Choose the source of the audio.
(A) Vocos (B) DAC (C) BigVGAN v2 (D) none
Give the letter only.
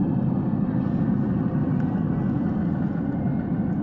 D